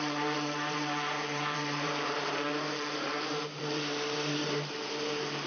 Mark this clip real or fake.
fake